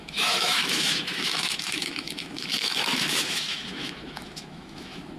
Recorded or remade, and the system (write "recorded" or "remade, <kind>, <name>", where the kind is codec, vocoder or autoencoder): remade, autoencoder, DAC-VAE